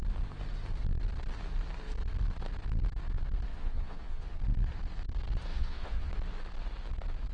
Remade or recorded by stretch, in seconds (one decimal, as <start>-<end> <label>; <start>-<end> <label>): 0.0-3.5 recorded; 3.5-4.4 remade; 4.4-5.5 recorded; 5.5-6.1 remade; 6.1-7.3 recorded